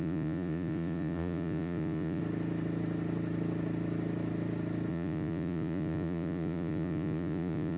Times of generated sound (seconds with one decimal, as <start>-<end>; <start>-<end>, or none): 0.0-2.2; 4.9-7.8